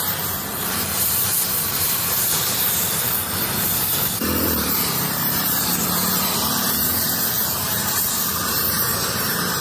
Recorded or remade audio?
remade